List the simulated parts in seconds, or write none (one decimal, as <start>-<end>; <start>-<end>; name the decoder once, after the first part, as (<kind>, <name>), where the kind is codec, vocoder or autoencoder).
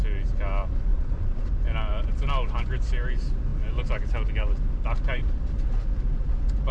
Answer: 0.9-1.5 (vocoder, Vocos)